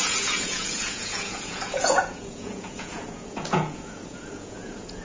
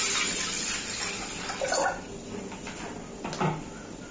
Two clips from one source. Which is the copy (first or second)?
first